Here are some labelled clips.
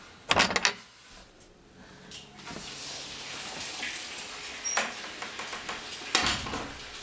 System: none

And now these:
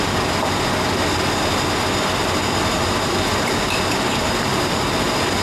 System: none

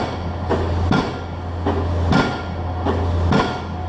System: none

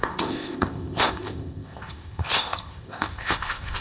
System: codec, ZipCodec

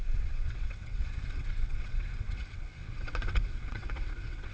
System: vocoder, WaveNeXt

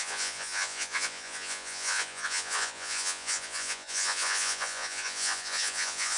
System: vocoder, Vocos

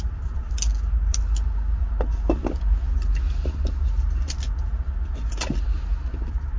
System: none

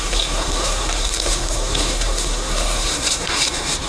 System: codec, SNAC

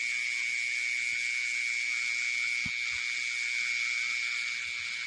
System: none